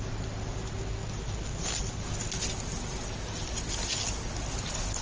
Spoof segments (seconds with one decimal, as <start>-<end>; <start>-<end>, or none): none